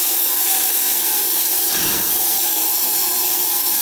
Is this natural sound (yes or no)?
no